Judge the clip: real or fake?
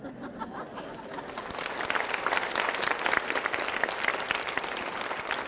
real